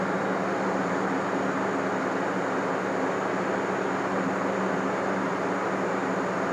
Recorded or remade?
recorded